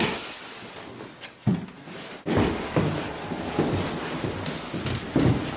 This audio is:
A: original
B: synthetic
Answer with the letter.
A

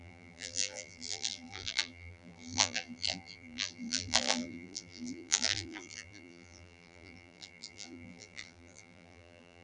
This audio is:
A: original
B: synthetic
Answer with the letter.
B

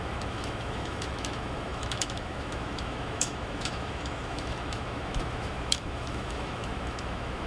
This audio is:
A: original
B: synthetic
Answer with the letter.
B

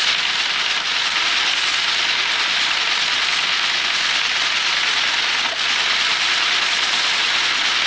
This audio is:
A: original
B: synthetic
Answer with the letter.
A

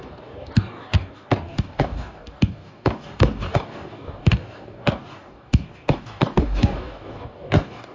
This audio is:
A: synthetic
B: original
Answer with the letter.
A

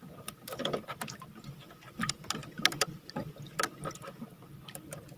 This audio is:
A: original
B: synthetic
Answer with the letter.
A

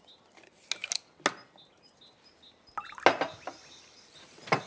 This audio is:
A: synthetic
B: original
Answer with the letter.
B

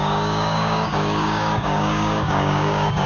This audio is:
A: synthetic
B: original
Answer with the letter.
A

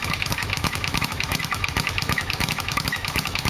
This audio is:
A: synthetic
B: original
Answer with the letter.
A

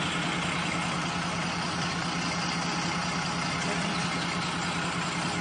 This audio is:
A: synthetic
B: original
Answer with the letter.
B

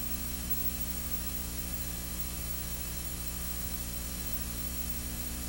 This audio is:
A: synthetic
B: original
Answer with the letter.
A